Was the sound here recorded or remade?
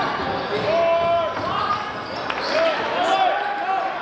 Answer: recorded